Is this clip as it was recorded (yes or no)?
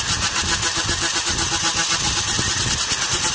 yes